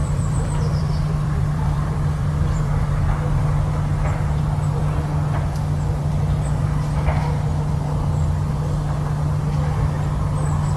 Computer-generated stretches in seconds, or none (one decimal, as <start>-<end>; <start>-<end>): 0.0-2.9